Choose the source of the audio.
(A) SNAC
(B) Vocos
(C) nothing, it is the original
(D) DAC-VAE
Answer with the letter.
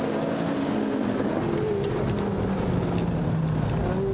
C